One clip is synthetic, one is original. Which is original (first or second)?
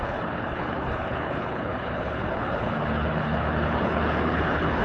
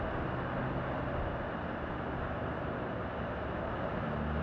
second